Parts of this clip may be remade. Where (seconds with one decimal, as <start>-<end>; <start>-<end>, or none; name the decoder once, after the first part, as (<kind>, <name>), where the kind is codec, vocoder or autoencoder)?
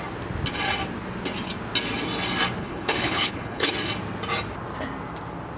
2.6-3.7 (codec, HILCodec)